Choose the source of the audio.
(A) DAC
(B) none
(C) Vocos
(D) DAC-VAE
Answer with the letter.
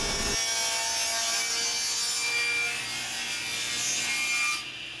B